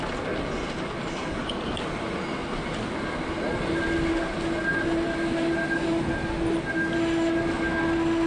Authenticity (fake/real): real